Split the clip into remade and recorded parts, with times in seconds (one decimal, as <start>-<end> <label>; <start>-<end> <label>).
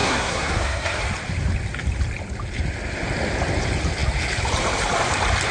0.0-1.0 remade; 1.0-5.5 recorded